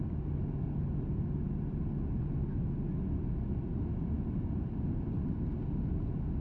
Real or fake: real